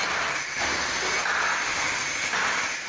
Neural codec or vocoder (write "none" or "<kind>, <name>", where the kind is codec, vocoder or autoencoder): none